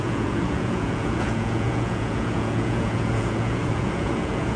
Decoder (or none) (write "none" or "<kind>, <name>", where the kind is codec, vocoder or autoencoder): vocoder, Vocos